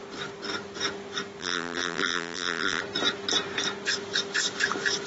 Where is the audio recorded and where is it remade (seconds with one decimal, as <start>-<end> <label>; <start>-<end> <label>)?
0.0-1.4 recorded; 1.4-2.8 remade; 2.8-5.1 recorded